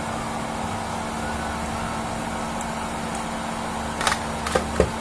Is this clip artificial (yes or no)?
no